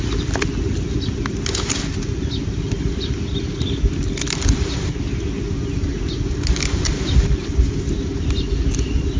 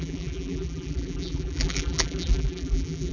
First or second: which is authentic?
first